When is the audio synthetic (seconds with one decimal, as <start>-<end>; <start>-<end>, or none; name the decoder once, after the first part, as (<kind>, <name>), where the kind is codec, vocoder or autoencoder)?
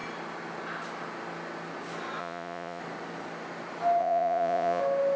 2.2-2.8 (vocoder, Vocos); 4.0-4.8